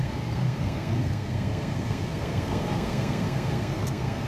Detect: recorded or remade remade